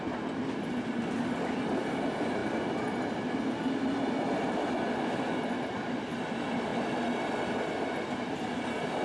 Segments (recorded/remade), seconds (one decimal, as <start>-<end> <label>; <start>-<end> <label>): 0.0-9.0 recorded